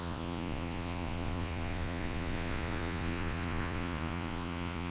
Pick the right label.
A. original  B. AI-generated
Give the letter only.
B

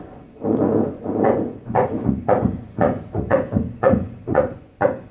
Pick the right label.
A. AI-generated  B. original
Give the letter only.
A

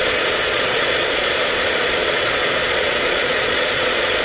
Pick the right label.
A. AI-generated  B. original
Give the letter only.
A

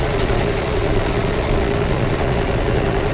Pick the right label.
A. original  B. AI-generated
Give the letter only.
B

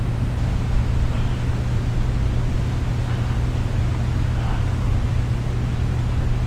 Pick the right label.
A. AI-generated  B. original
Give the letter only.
B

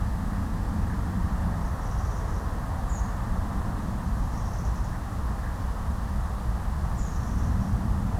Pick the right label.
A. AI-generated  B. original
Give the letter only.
B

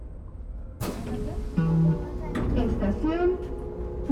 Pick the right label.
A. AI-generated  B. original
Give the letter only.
B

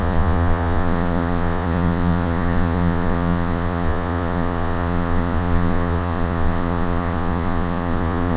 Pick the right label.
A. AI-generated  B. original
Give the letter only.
A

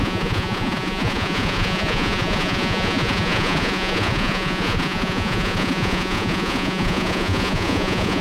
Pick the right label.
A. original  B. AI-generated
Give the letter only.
B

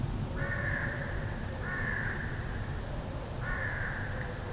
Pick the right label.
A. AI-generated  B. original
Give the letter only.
B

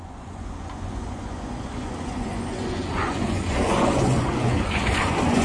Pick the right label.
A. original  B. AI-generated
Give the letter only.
B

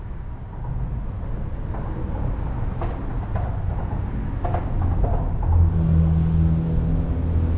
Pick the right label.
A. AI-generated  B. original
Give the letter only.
B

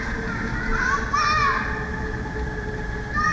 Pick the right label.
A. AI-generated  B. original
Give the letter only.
B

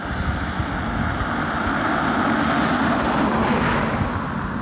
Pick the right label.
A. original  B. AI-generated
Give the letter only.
A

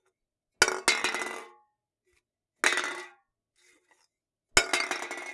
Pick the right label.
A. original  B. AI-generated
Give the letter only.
A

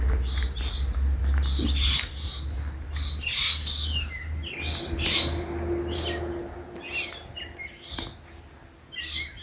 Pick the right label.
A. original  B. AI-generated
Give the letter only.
A